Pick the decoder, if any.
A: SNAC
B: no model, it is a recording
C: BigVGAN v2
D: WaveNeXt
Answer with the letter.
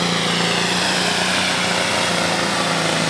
B